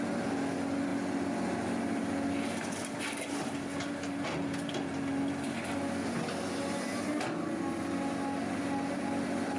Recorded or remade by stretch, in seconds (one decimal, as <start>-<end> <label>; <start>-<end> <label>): 0.0-9.6 recorded